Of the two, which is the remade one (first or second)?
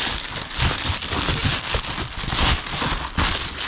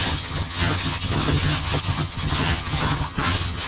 second